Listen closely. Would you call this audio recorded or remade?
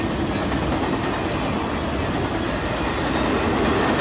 recorded